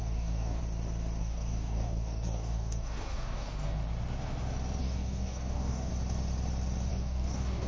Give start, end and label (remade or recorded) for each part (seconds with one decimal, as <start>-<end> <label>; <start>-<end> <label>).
0.0-0.6 remade; 0.6-1.2 recorded; 1.2-3.8 remade; 3.8-4.8 recorded; 4.8-5.9 remade; 5.9-6.9 recorded; 6.9-7.7 remade